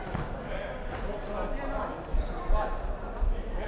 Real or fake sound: real